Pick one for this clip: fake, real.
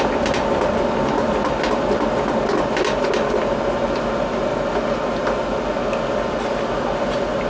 real